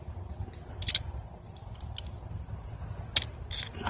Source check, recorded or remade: recorded